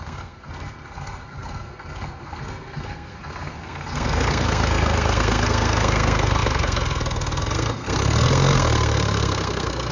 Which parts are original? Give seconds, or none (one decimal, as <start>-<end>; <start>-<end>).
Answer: none